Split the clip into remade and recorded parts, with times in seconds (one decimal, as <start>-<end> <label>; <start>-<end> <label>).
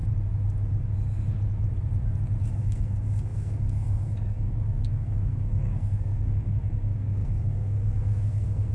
0.0-2.5 recorded; 2.5-8.7 remade